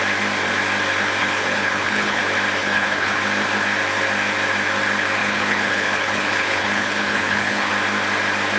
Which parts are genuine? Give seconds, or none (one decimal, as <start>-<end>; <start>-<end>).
0.0-1.2; 2.2-2.6; 3.2-5.2; 7.7-8.6